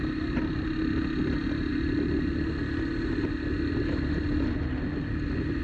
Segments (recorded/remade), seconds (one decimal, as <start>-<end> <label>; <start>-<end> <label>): 0.0-5.6 recorded